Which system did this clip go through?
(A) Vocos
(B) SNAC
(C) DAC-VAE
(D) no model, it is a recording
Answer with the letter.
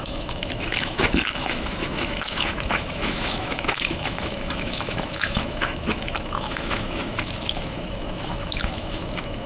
C